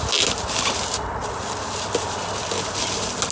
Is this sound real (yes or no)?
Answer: yes